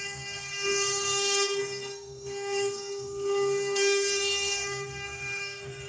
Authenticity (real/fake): fake